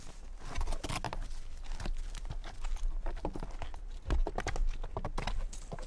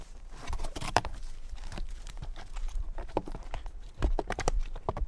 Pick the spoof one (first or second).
second